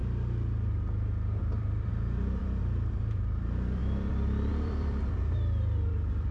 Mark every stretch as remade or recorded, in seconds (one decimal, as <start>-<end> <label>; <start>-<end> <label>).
0.0-1.4 recorded; 1.4-6.3 remade